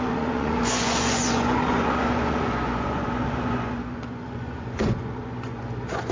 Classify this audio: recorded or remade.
remade